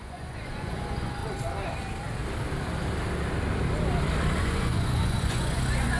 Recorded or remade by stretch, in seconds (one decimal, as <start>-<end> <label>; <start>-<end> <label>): 0.0-1.2 remade; 1.2-4.4 recorded; 4.4-6.0 remade